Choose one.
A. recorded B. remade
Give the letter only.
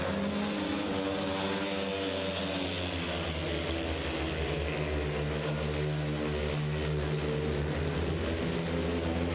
A